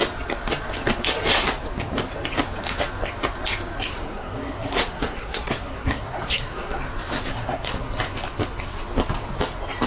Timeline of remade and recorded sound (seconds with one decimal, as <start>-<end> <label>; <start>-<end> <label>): 0.0-3.9 recorded; 3.9-6.8 remade; 6.8-7.3 recorded; 7.3-7.9 remade; 7.9-9.9 recorded